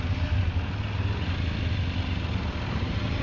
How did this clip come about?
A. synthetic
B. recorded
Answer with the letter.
B